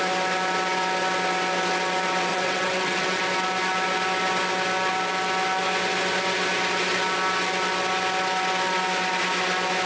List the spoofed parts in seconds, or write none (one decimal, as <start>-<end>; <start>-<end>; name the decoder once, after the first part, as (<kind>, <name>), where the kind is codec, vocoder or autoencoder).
2.3-3.2 (vocoder, WaveNeXt)